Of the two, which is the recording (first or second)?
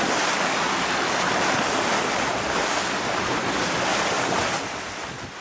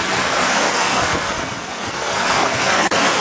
first